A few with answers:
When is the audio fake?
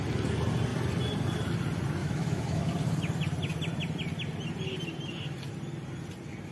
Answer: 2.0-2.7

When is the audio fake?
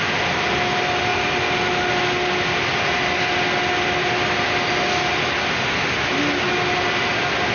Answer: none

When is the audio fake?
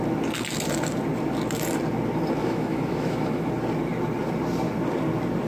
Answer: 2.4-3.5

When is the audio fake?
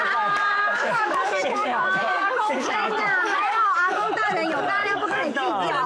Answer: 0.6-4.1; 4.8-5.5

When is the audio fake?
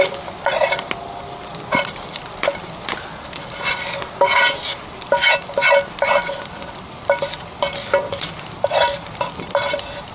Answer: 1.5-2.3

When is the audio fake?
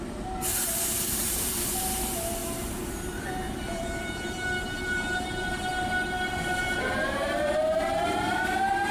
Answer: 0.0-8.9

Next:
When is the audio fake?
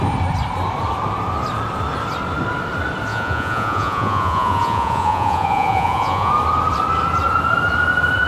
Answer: 3.1-6.3